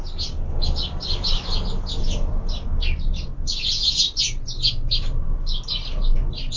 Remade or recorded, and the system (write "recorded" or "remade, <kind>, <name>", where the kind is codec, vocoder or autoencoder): recorded